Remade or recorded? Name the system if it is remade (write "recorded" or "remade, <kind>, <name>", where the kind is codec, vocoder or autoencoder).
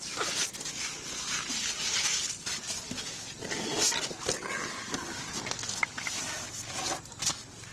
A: recorded